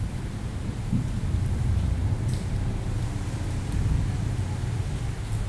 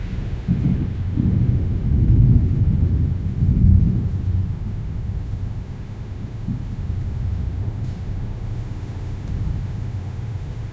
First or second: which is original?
first